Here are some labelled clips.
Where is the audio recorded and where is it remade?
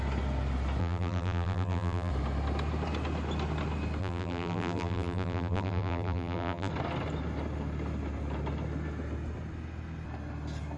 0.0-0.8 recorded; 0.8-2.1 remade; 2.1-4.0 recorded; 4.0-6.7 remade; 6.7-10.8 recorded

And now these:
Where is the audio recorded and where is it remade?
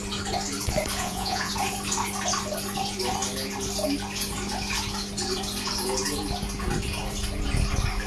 0.0-1.0 recorded; 1.0-1.5 remade; 1.5-8.1 recorded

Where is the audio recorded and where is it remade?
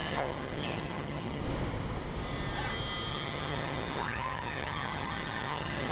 0.0-1.4 remade; 1.4-3.1 recorded; 3.1-5.9 remade